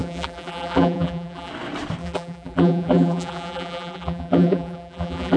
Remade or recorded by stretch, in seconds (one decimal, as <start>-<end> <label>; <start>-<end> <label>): 0.0-1.5 remade; 1.5-2.0 recorded; 2.0-5.4 remade